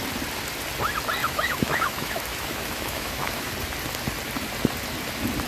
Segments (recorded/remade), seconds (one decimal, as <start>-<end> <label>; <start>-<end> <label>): 0.0-1.2 recorded; 1.2-3.5 remade; 3.5-5.5 recorded